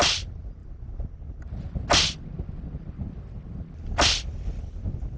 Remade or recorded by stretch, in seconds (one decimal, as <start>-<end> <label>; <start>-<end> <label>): 0.0-5.2 recorded